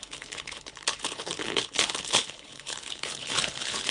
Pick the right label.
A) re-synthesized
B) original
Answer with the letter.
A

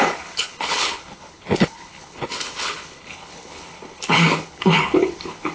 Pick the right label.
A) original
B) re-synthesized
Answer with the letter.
B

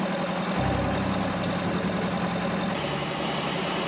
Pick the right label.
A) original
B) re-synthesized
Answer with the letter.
A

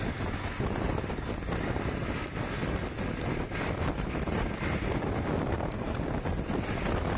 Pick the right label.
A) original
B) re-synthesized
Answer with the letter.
A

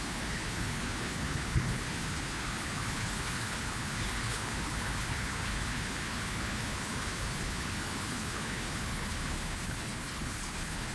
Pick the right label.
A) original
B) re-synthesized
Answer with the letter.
B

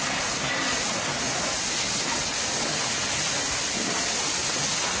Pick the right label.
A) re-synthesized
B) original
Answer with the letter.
B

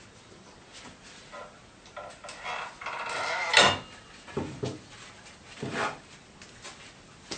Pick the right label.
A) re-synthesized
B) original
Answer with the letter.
B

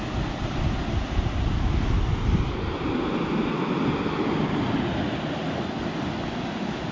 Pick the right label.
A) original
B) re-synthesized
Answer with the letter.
A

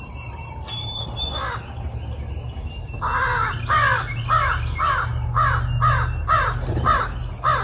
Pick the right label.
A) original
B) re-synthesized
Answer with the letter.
A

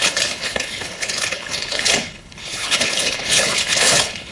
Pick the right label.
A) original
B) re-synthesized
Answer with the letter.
B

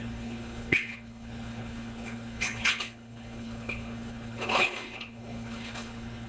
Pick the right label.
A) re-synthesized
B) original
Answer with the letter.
A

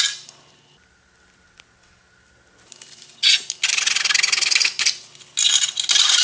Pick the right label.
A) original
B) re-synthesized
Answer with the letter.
A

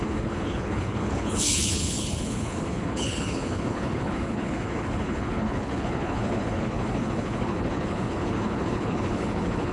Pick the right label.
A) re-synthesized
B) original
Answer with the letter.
A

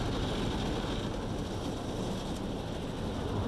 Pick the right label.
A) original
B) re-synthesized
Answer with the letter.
A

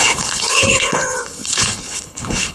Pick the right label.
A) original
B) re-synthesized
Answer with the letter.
B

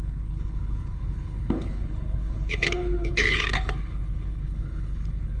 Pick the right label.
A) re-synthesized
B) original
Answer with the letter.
A